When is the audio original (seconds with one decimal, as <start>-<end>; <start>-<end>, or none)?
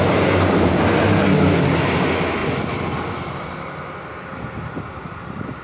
0.0-5.6